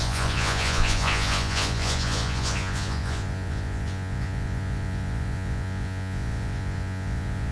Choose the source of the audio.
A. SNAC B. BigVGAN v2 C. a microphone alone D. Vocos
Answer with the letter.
D